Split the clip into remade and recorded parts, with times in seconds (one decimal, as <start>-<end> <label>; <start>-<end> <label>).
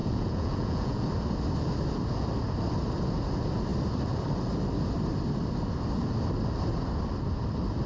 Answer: 0.0-1.1 remade; 1.1-7.9 recorded